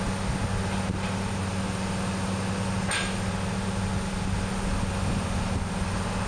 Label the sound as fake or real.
real